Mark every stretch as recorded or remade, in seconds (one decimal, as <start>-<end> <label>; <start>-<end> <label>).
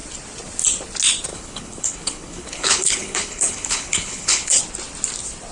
0.0-1.3 recorded; 1.3-4.6 remade; 4.6-5.5 recorded